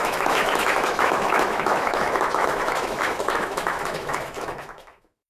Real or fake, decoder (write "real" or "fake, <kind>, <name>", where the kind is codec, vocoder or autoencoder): fake, autoencoder, DAC-VAE